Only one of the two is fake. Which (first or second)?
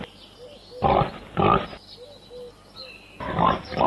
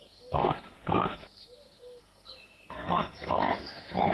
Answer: second